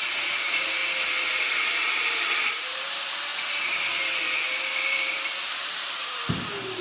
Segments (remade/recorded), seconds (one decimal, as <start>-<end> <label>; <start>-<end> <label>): 0.0-0.8 remade; 0.8-1.3 recorded; 1.3-3.3 remade; 3.3-4.7 recorded; 4.7-6.2 remade; 6.2-6.8 recorded